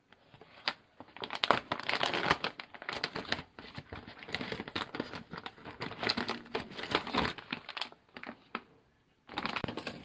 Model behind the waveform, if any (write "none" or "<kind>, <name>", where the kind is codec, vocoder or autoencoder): none